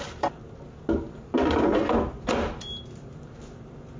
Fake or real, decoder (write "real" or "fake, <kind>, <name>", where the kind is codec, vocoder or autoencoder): real